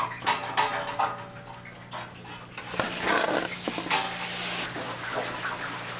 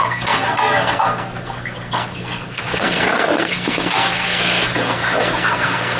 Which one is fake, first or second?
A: second